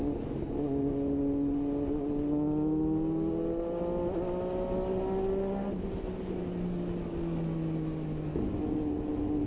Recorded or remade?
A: recorded